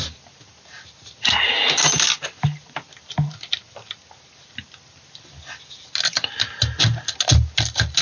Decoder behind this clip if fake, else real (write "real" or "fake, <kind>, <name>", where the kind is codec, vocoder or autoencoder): real